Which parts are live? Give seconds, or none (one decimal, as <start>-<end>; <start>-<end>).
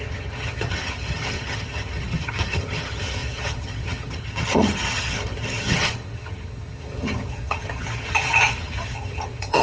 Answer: none